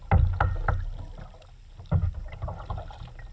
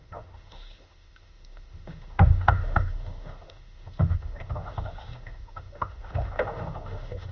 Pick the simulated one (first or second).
second